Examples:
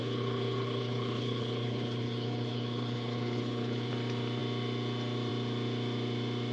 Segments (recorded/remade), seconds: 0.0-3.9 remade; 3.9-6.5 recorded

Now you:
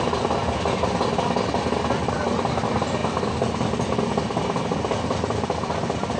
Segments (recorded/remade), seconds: 0.0-6.2 recorded

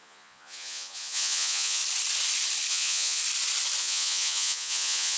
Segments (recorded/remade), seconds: 0.0-1.8 remade; 1.8-2.7 recorded; 2.7-3.2 remade; 3.2-3.8 recorded; 3.8-5.2 remade

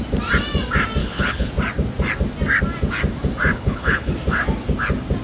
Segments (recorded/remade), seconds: 0.0-1.0 recorded; 1.0-1.5 remade; 1.5-3.5 recorded; 3.5-4.1 remade; 4.1-5.2 recorded